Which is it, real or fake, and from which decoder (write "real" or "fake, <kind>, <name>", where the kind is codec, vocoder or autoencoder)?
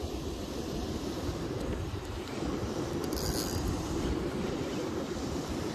real